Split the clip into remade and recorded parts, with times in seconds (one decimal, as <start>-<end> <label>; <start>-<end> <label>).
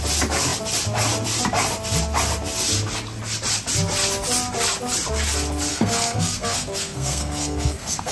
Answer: 0.0-5.7 recorded; 5.7-8.1 remade